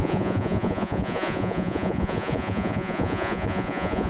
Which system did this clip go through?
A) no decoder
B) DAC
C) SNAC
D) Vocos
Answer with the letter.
D